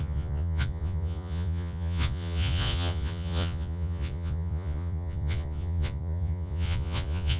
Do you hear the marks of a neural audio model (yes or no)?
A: yes